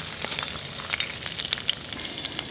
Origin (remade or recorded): recorded